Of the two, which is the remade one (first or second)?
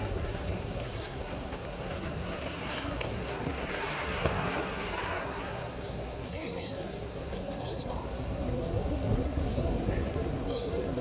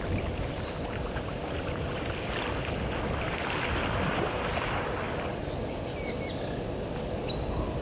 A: first